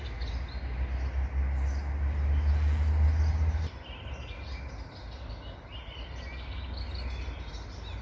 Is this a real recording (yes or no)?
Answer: yes